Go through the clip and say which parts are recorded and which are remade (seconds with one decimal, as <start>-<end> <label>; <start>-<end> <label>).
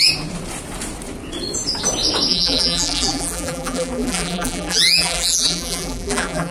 0.0-2.3 recorded; 2.3-6.5 remade